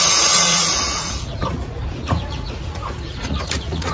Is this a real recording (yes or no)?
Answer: no